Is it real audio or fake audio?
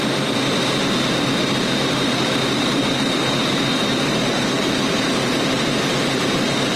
fake